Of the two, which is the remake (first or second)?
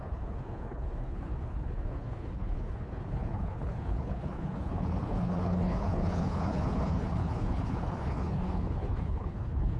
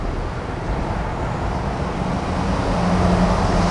first